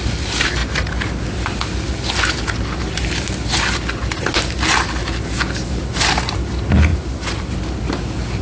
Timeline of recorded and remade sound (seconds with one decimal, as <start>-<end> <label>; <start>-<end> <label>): 0.0-8.4 recorded